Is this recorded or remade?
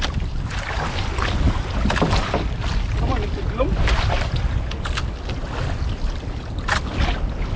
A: recorded